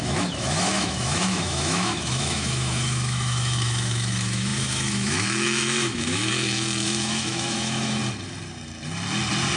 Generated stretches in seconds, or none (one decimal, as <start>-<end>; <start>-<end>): 0.0-8.0